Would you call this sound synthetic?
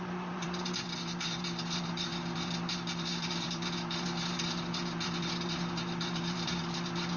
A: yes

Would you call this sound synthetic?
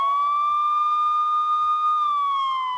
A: no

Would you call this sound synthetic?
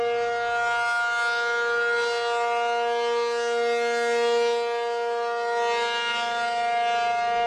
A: no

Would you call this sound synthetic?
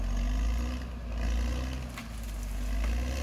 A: no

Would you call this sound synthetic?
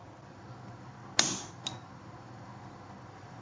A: no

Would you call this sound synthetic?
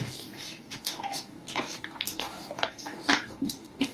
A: yes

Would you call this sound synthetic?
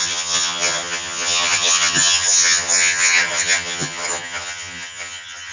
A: yes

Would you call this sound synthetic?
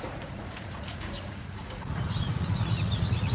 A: yes